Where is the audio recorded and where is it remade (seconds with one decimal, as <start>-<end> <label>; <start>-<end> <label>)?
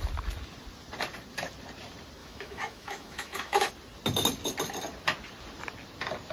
0.0-2.2 recorded; 2.2-3.7 remade; 3.7-6.3 recorded